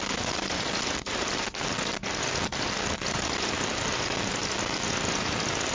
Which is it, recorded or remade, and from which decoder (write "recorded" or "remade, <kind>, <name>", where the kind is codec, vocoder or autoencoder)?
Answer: recorded